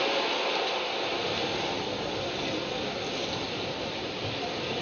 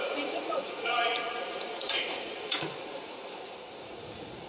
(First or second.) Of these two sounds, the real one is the first